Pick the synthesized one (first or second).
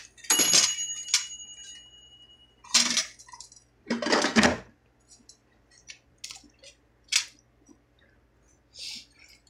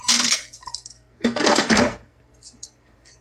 second